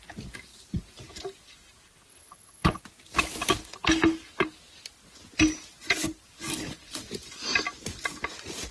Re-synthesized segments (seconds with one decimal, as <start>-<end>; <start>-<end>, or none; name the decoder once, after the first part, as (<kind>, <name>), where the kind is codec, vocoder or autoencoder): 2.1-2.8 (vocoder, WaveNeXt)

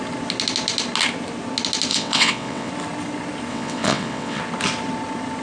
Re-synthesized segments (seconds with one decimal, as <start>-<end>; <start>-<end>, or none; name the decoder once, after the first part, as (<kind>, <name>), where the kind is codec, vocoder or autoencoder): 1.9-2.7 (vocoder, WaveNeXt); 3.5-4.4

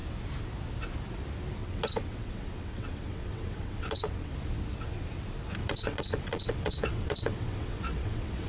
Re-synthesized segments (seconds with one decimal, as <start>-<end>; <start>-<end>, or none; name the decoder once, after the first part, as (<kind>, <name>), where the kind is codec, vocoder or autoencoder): 1.6-4.3 (vocoder, WaveNeXt); 5.6-8.5